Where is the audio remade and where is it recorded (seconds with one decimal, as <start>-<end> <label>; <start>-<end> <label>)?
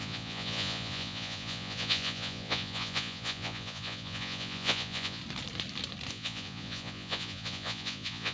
0.0-5.2 remade; 5.2-6.1 recorded; 6.1-8.3 remade